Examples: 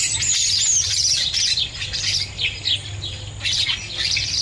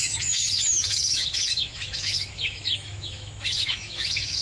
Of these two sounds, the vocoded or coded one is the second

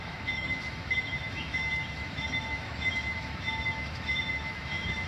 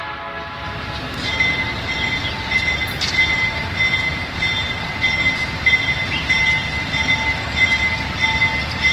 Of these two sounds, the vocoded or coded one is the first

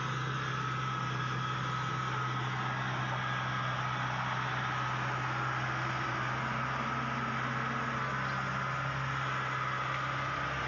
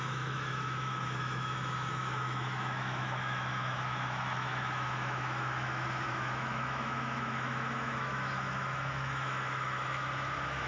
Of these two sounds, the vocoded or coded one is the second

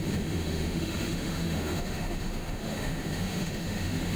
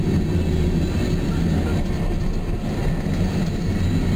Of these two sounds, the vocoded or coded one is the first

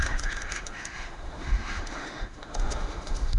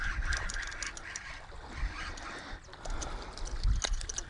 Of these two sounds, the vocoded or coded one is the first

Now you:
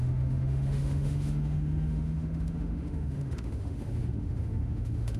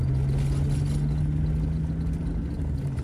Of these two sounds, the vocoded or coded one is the first